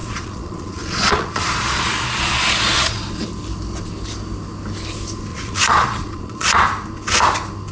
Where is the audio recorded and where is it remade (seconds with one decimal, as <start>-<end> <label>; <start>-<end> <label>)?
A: 0.0-3.0 remade; 3.0-5.3 recorded; 5.3-6.6 remade; 6.6-7.7 recorded